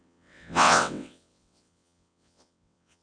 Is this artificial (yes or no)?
yes